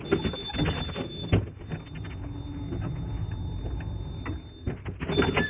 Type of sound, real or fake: real